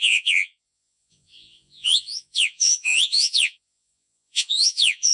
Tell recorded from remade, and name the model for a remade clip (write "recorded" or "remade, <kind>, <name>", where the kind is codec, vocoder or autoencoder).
remade, vocoder, Vocos